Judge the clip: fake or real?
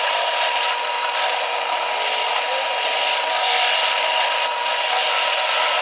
real